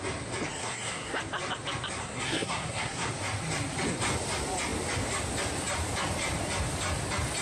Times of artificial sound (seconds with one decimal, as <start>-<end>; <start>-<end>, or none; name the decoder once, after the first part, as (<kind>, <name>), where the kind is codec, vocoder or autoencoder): 0.6-1.2 (codec, SNAC); 2.0-3.1